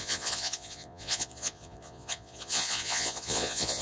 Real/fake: fake